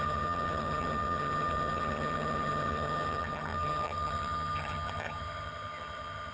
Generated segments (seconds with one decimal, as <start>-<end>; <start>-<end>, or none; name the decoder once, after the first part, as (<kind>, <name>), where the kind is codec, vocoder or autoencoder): 0.0-6.3 (vocoder, HiFi-GAN)